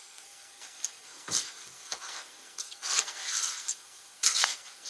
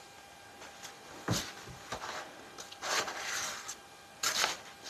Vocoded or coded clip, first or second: first